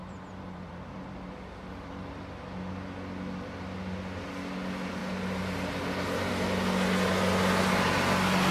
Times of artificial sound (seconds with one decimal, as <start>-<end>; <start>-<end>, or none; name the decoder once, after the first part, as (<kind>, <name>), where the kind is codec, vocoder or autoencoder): 0.0-2.7 (vocoder, BigVGAN v2)